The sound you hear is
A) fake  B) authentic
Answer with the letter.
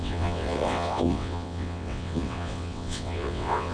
A